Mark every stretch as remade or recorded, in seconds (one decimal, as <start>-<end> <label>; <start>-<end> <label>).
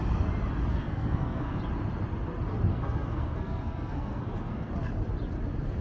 0.0-0.7 recorded; 0.7-1.6 remade; 1.6-2.7 recorded; 2.7-4.7 remade; 4.7-5.8 recorded